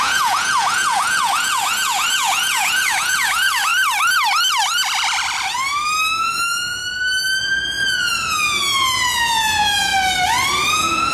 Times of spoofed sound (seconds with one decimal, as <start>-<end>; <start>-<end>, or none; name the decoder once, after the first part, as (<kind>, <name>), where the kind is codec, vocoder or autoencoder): 0.0-3.7 (vocoder, Vocos); 6.2-6.8; 7.4-9.9; 10.7-11.1